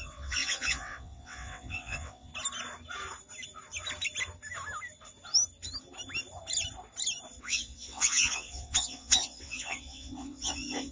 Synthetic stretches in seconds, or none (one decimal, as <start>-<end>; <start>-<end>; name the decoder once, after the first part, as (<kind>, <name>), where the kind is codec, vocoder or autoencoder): 0.0-2.3 (vocoder, WaveNeXt); 7.4-10.9